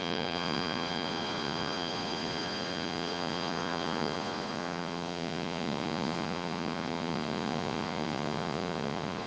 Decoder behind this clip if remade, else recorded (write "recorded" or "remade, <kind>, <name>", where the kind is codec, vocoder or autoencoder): remade, vocoder, Vocos